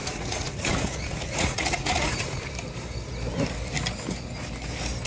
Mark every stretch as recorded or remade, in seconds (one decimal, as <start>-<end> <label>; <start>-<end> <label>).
0.0-2.4 remade; 2.4-5.1 recorded